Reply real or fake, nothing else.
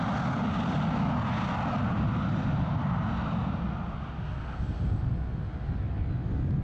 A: real